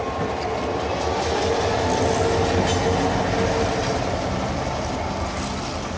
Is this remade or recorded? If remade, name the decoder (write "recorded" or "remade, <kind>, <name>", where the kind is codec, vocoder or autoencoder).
recorded